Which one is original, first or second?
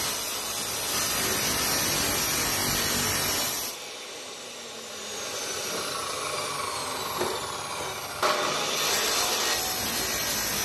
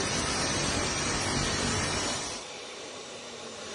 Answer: first